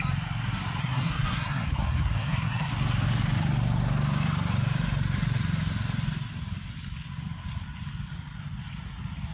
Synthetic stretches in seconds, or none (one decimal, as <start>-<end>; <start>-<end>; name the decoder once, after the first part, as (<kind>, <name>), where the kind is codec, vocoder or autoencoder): 0.8-2.7 (codec, SNAC)